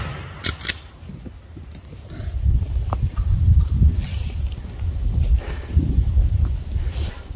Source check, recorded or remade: recorded